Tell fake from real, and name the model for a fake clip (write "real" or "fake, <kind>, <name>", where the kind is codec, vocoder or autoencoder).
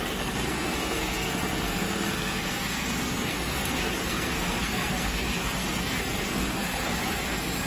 fake, codec, SNAC